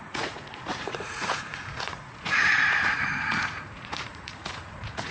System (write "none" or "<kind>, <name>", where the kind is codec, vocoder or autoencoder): vocoder, Vocos